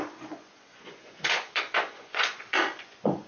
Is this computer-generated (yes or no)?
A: yes